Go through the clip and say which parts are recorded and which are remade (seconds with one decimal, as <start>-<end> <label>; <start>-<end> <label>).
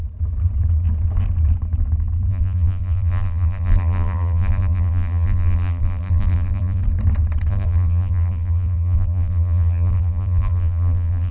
0.0-2.3 recorded; 2.3-6.8 remade; 6.8-7.5 recorded; 7.5-11.3 remade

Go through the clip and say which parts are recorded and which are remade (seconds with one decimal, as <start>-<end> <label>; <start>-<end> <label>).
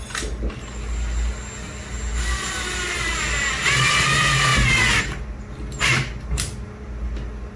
0.0-7.6 recorded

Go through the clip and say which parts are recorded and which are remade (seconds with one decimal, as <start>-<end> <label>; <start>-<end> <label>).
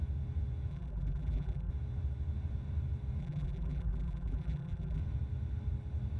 0.0-0.7 recorded; 0.7-1.7 remade; 1.7-3.2 recorded; 3.2-5.0 remade; 5.0-6.2 recorded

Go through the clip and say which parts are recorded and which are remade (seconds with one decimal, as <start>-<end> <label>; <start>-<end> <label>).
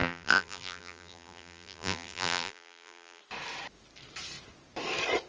0.0-3.2 remade; 3.2-5.3 recorded